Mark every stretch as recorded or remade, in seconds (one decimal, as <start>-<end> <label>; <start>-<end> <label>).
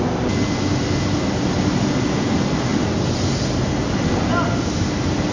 0.0-5.3 recorded